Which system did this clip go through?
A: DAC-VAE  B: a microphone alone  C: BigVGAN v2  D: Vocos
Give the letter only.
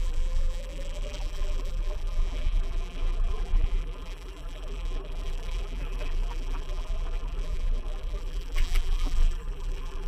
C